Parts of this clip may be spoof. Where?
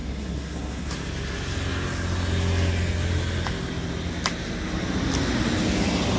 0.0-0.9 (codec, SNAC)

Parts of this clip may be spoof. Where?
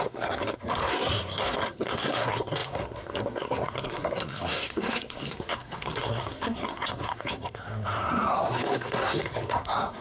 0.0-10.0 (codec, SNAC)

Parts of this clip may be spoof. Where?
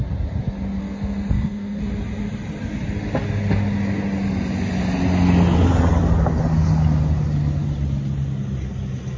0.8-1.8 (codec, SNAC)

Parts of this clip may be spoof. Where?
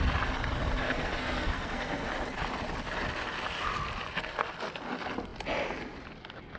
0.8-2.1 (codec, SNAC)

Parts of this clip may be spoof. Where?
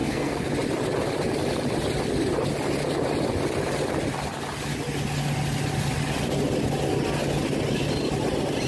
0.0-0.5 (codec, SNAC)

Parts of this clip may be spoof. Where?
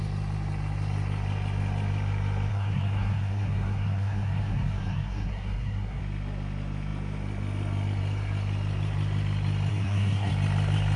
2.5-6.0 (codec, SNAC); 9.7-10.3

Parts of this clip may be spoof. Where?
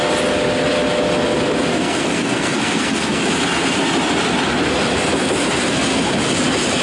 1.7-3.2 (codec, SNAC)